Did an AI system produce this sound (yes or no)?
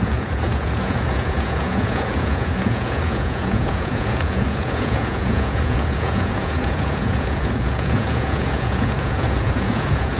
yes